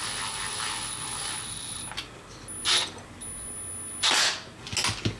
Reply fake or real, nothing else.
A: real